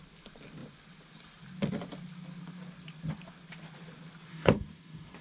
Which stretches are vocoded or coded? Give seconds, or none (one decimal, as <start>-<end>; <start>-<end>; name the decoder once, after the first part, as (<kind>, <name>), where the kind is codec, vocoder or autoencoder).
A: 4.3-5.2 (codec, DAC)